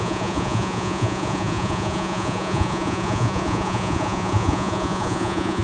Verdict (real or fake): fake